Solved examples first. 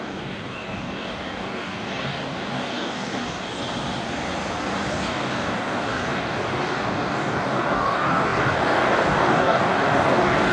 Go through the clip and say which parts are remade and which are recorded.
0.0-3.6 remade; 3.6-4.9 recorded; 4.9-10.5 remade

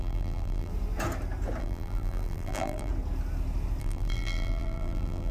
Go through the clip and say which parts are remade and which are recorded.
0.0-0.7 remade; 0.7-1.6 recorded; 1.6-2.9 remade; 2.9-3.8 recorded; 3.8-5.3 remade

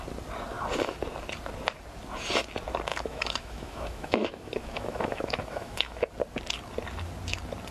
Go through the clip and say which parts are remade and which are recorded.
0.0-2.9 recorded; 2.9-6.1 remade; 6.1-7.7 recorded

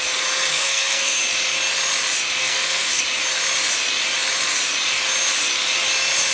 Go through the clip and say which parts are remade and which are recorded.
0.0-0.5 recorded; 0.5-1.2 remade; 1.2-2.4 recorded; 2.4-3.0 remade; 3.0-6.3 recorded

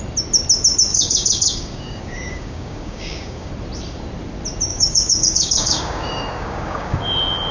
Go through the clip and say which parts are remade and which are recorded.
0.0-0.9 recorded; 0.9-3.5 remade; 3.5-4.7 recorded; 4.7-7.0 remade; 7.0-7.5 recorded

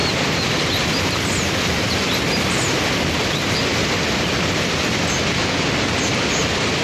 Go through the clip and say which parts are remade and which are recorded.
0.0-1.6 remade; 1.6-6.8 recorded